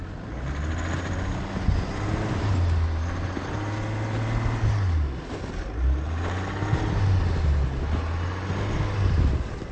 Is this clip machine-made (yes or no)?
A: no